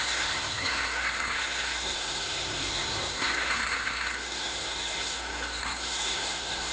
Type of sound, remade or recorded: remade